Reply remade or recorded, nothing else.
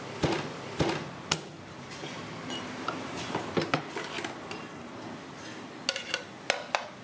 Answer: recorded